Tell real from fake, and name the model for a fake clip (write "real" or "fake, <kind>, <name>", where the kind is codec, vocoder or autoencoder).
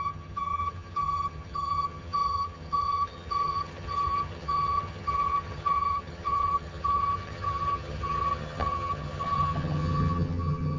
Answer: fake, vocoder, HiFi-GAN